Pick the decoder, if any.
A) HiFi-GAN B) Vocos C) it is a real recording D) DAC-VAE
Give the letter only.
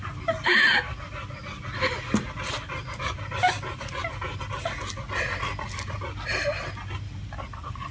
C